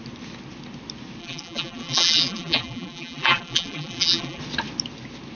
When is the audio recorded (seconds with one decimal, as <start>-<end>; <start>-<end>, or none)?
0.0-1.2; 4.4-5.3